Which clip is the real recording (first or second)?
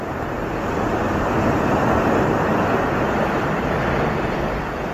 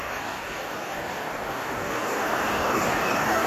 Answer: first